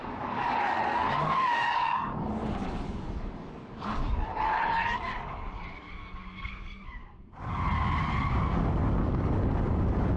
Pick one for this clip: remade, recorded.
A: remade